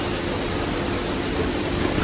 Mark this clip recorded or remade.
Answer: recorded